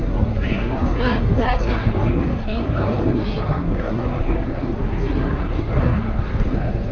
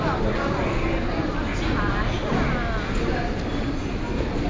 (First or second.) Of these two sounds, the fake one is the first